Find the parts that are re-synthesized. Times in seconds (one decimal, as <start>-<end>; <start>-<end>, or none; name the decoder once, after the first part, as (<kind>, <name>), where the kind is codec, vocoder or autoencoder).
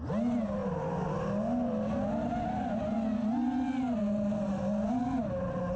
none